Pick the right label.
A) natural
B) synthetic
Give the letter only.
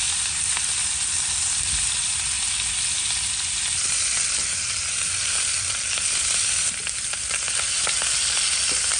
A